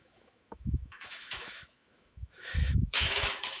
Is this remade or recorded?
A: remade